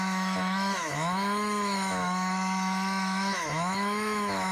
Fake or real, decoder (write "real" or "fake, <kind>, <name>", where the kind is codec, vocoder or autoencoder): fake, autoencoder, DAC-VAE